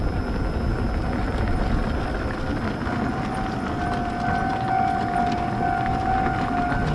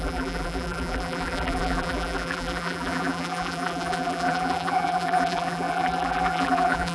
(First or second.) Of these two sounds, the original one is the first